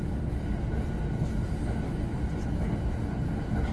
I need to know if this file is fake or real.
real